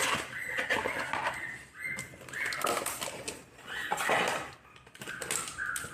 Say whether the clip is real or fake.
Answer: fake